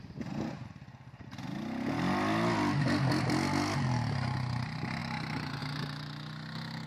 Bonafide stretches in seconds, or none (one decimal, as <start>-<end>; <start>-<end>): 0.0-6.9